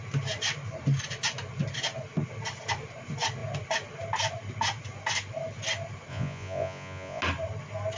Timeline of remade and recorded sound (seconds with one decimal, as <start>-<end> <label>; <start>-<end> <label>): 0.0-6.1 recorded; 6.1-7.2 remade; 7.2-8.0 recorded